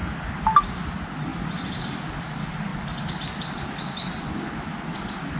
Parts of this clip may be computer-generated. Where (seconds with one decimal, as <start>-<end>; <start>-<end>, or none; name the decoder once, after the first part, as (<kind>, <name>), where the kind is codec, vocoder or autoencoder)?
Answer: none